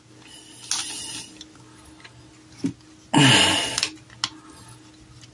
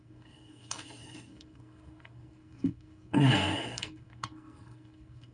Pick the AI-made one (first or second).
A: second